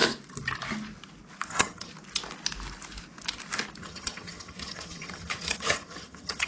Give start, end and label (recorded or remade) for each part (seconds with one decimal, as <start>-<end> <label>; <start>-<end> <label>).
0.0-1.5 recorded; 1.5-1.9 remade; 1.9-3.8 recorded; 3.8-6.5 remade